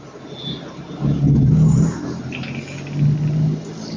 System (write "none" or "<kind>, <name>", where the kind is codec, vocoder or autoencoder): none